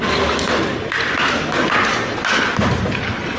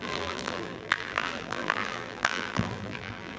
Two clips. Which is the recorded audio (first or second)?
first